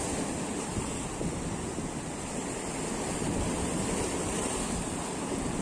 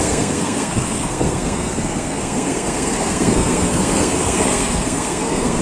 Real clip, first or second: first